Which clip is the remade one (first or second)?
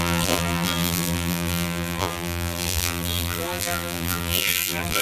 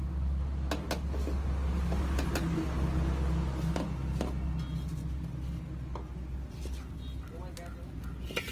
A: first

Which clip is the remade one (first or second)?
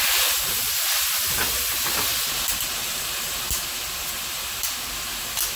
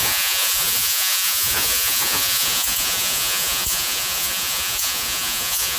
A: second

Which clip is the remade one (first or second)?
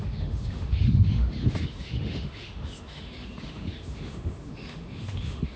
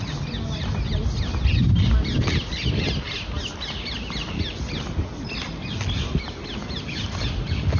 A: first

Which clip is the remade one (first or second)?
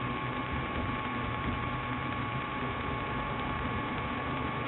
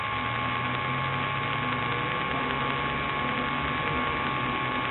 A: first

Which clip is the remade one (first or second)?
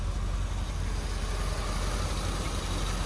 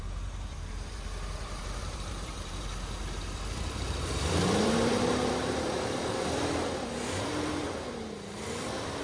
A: second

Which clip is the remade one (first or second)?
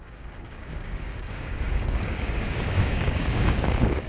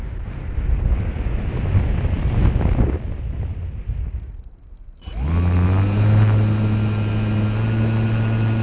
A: first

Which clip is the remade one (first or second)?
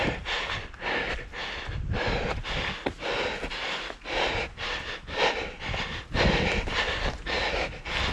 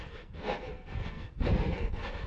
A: second